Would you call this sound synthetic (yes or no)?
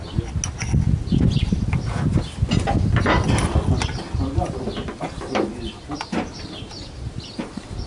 no